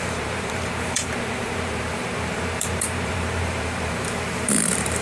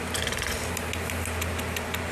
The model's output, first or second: first